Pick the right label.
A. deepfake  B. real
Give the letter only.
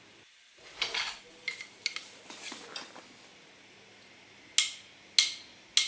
B